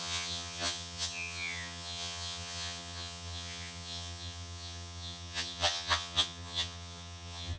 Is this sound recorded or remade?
remade